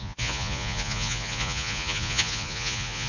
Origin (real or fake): fake